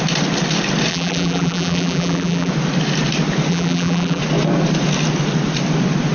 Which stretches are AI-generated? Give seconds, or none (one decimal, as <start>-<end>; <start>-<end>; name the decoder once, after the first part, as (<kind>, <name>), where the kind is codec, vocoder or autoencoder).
0.9-2.5 (vocoder, BigVGAN v2); 3.5-4.2